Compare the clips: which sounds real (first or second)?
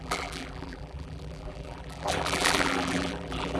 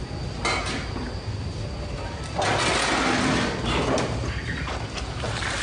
second